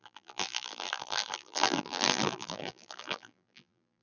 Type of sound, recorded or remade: remade